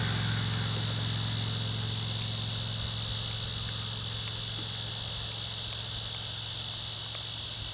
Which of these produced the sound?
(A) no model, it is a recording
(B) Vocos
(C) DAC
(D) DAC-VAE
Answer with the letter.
A